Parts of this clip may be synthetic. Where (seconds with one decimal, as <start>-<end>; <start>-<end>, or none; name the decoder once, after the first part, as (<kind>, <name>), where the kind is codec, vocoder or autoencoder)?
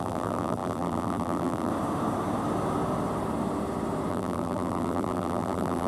0.0-1.7 (vocoder, BigVGAN v2); 4.1-5.9